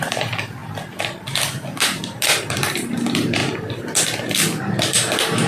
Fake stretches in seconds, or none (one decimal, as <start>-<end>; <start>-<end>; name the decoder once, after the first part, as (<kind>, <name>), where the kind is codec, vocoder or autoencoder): 0.0-0.6 (vocoder, BigVGAN v2); 2.5-3.4; 4.6-5.5